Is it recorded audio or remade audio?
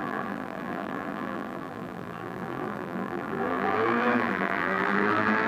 remade